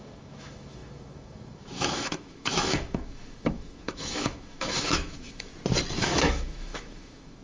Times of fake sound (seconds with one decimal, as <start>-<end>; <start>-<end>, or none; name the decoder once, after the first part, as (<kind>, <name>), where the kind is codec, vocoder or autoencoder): 0.0-5.5 (autoencoder, DAC-VAE); 6.0-7.4